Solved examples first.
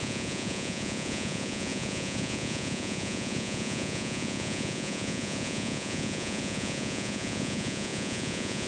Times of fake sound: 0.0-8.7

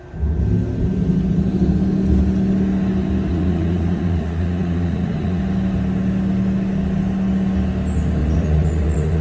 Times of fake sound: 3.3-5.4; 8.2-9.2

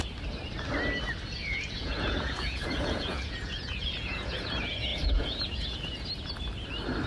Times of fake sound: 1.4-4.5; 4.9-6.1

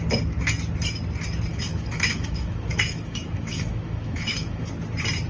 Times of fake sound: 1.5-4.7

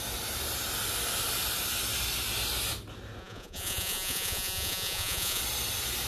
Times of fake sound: 3.2-5.4

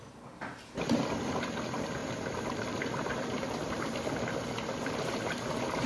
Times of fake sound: 2.0-5.5

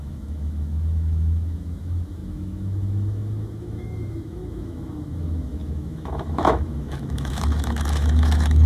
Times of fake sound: 0.0-8.7

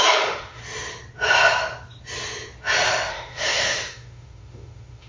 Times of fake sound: 0.0-0.6; 3.1-5.1